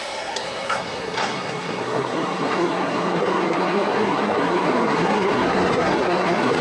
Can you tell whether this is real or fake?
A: fake